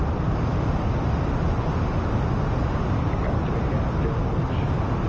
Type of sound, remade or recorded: recorded